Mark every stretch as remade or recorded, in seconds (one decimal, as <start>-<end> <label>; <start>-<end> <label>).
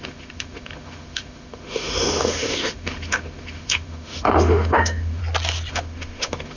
0.0-5.2 remade; 5.2-5.7 recorded; 5.7-6.6 remade